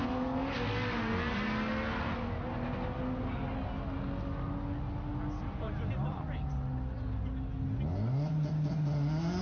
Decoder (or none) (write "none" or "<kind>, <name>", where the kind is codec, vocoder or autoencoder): none